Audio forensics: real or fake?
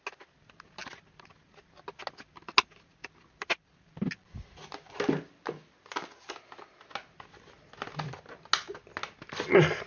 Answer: real